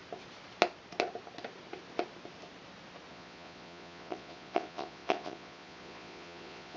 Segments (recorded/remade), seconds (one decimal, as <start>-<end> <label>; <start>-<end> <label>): 0.0-3.1 recorded; 3.1-6.8 remade